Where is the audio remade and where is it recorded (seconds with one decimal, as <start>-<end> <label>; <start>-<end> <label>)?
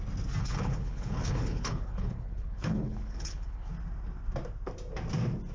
0.0-0.4 recorded; 0.4-3.7 remade; 3.7-5.5 recorded